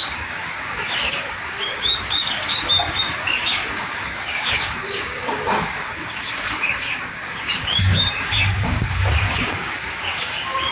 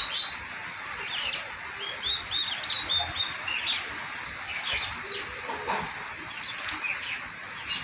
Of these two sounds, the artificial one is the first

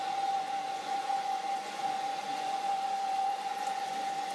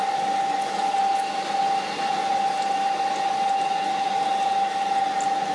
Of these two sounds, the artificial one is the first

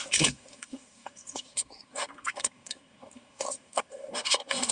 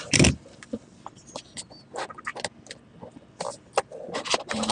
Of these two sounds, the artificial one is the first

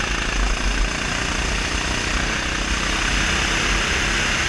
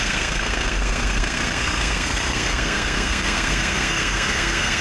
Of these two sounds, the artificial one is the second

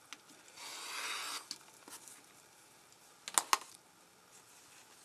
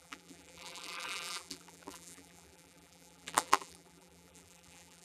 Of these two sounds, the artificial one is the second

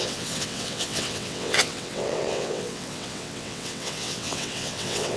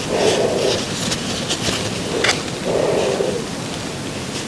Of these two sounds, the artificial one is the first